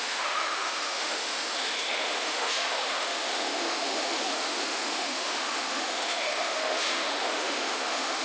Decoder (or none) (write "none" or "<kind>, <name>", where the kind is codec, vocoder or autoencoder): autoencoder, DAC-VAE